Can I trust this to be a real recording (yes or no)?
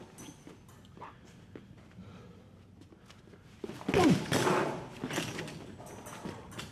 yes